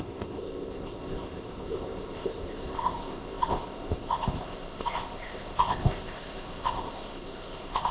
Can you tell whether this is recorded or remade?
remade